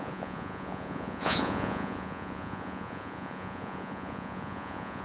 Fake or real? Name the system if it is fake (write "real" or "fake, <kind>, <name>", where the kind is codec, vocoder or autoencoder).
fake, vocoder, Vocos